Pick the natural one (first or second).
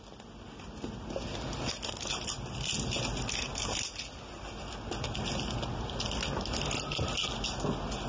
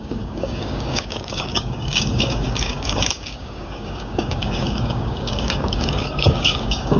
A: first